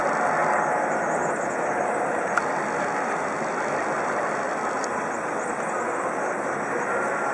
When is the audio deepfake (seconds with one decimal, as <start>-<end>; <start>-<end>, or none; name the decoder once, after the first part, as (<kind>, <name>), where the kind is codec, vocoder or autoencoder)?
none